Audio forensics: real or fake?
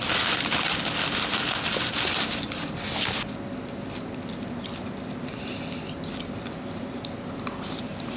real